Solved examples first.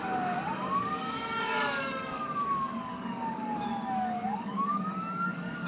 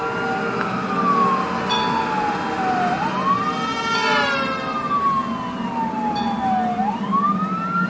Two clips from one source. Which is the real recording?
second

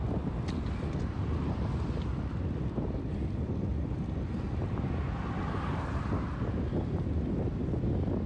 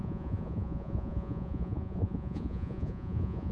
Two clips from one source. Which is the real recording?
first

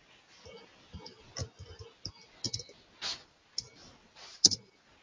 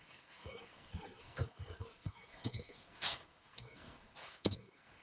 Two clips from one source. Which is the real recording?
first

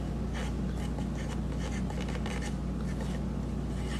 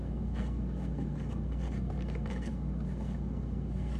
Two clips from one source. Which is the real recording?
first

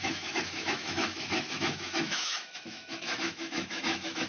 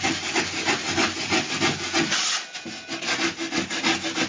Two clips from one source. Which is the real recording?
second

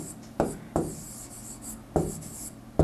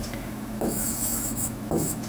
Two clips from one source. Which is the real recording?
first